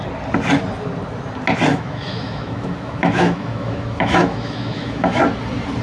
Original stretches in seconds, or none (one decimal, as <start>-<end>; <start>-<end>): 0.0-1.7; 5.2-5.8